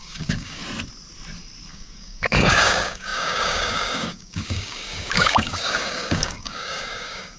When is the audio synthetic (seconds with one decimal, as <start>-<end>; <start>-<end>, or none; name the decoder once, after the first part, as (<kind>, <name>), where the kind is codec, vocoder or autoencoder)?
0.0-0.6 (codec, DAC); 1.7-7.4